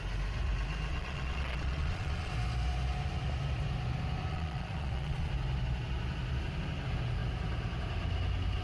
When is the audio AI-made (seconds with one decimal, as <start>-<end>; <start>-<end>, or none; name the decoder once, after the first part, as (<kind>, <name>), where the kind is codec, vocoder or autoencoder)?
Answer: 0.9-2.3 (vocoder, Vocos); 4.3-5.3